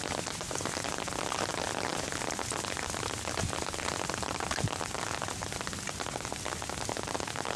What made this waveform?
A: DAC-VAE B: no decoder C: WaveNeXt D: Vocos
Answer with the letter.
B